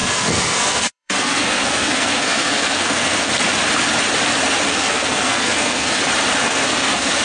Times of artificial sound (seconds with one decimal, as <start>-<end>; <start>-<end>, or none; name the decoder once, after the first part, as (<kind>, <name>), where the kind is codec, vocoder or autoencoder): 0.0-3.3 (codec, SNAC); 4.7-6.0; 6.4-7.2